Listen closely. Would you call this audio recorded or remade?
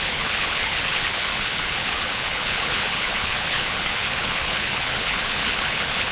remade